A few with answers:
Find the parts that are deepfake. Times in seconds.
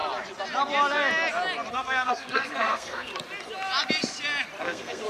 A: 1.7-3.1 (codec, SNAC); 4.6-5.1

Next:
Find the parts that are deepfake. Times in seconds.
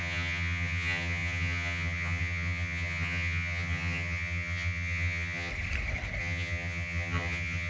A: 0.0-5.5 (vocoder, HiFi-GAN); 6.2-7.7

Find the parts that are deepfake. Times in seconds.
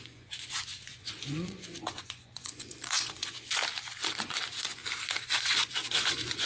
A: 0.0-3.6 (vocoder, Vocos); 4.2-4.8; 5.4-6.5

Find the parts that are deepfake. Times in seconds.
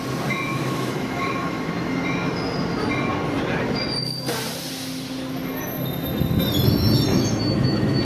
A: 0.5-1.7 (autoencoder, DAC-VAE); 7.1-8.0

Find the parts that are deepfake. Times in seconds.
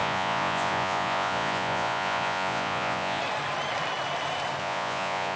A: 0.0-3.2 (vocoder, Vocos); 4.6-5.4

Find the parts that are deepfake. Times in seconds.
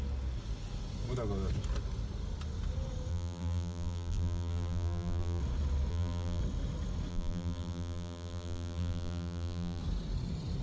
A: 3.1-5.4 (vocoder, BigVGAN v2); 5.9-6.4; 7.1-9.8